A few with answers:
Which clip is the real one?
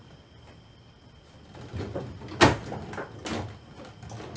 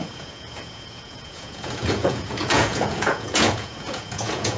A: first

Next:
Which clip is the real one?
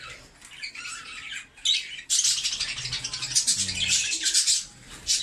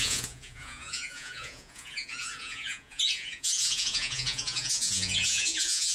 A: first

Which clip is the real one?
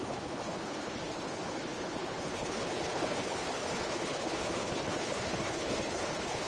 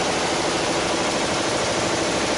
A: second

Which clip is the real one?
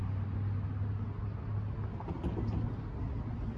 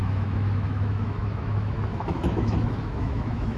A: first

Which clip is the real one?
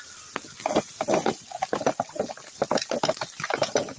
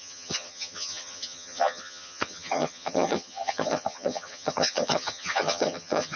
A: first